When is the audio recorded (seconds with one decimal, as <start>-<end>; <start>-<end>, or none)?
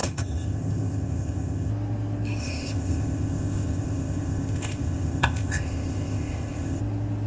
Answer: 1.7-2.4; 6.8-7.3